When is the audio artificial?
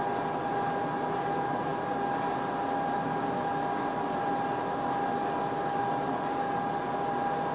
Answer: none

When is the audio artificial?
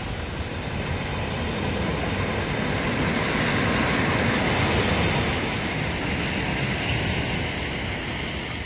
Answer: 1.1-2.1 (vocoder, BigVGAN v2); 5.3-6.1; 6.9-7.6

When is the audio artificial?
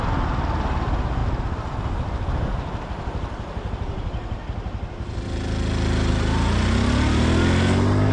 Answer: none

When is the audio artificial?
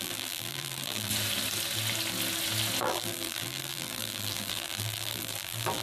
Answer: 0.0-1.1 (vocoder, BigVGAN v2); 2.8-5.8